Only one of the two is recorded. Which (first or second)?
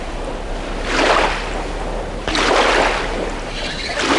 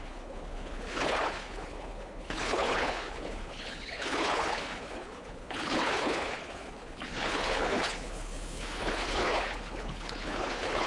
first